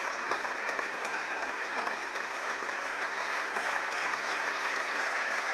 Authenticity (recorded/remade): remade